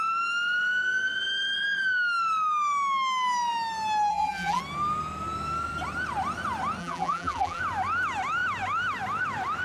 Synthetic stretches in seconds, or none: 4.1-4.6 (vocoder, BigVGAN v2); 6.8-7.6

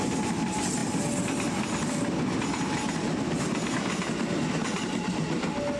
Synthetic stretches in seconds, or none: none

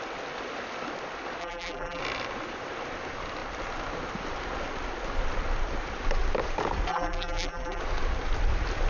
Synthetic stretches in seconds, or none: 1.4-2.0 (vocoder, BigVGAN v2); 6.9-7.8

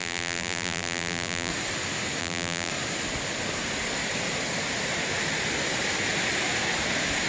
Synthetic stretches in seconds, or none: 0.0-1.5 (vocoder, BigVGAN v2); 2.2-2.7

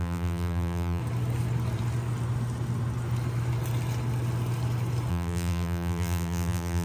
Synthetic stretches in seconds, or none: 0.0-1.0 (vocoder, BigVGAN v2); 5.1-6.8

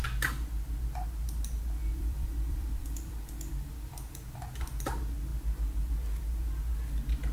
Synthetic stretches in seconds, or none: 2.0-3.5 (vocoder, BigVGAN v2)

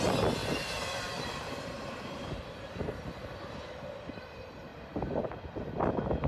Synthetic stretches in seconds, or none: 0.4-3.7 (vocoder, BigVGAN v2)